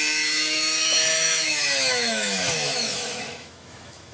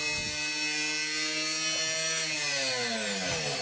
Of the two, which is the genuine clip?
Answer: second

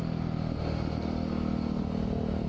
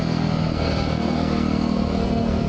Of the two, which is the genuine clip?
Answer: first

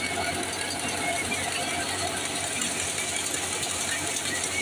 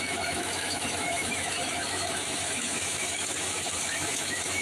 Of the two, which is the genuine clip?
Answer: first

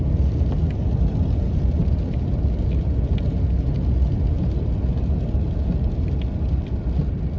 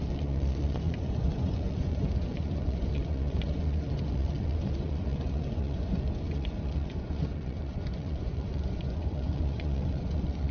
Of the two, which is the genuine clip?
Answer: first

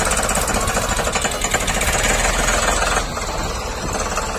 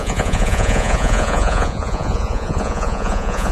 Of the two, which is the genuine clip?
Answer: first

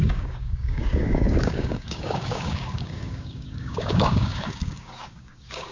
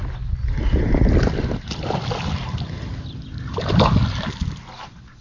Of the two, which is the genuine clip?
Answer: second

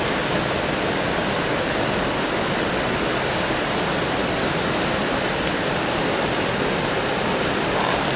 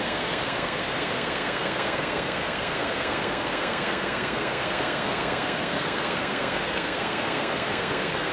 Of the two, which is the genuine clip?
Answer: first